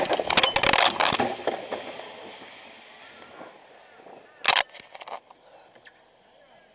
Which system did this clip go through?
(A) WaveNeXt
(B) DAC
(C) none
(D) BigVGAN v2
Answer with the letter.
C